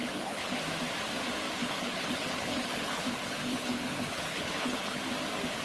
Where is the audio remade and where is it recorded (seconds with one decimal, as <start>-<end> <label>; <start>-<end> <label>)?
0.0-0.6 remade; 0.6-1.6 recorded; 1.6-5.0 remade; 5.0-5.6 recorded